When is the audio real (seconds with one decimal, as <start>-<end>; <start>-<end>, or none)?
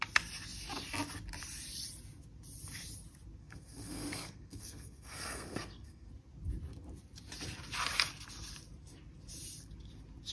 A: 0.0-3.4; 6.1-10.3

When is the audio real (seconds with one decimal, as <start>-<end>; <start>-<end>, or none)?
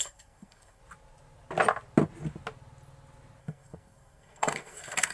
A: 0.8-3.4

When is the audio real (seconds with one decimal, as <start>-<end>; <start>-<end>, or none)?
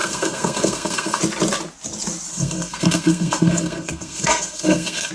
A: 1.2-2.3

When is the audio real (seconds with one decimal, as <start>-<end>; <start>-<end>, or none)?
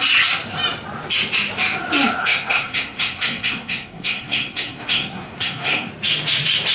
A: 0.0-2.2; 5.9-6.7